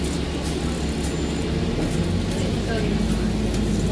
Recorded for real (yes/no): yes